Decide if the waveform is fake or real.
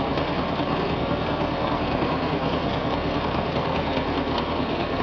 fake